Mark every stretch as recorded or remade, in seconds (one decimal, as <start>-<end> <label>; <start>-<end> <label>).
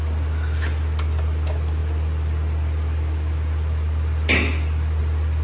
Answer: 0.0-5.4 recorded